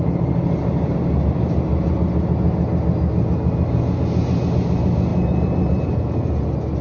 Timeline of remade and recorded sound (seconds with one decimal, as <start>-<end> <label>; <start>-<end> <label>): 0.0-6.8 recorded